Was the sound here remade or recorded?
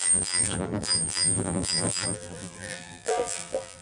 remade